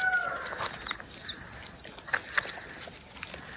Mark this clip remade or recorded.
recorded